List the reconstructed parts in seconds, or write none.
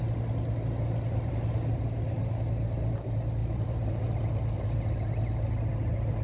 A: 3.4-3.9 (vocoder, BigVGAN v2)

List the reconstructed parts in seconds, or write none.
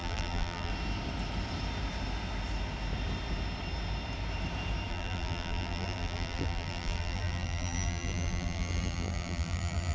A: 0.0-0.7 (vocoder, BigVGAN v2); 4.9-9.9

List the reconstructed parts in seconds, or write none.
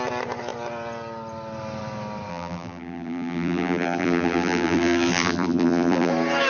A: 2.3-6.1 (vocoder, BigVGAN v2)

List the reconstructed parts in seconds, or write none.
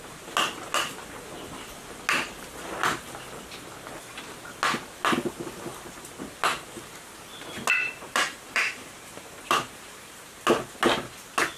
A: 7.8-10.0 (vocoder, BigVGAN v2)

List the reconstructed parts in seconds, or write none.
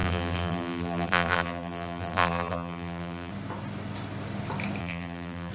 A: 0.0-3.3 (vocoder, BigVGAN v2); 4.8-5.5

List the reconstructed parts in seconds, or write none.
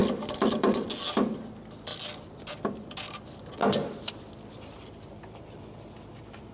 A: 0.0-0.8 (vocoder, BigVGAN v2)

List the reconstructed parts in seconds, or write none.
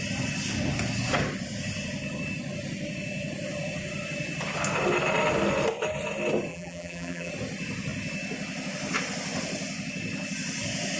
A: 6.5-7.3 (vocoder, BigVGAN v2)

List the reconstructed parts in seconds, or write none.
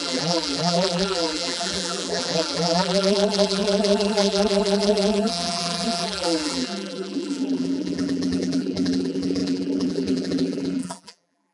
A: 0.0-11.5 (vocoder, BigVGAN v2)